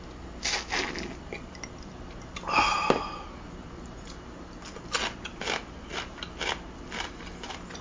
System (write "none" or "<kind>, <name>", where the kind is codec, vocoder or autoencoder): none